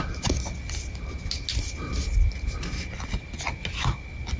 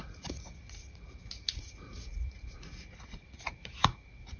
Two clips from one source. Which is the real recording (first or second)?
first